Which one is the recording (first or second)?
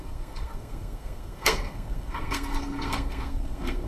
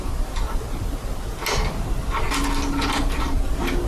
second